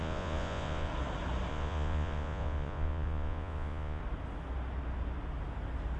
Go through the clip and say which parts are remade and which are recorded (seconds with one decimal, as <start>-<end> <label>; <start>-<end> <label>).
0.0-0.9 remade; 0.9-1.5 recorded; 1.5-4.0 remade; 4.0-6.0 recorded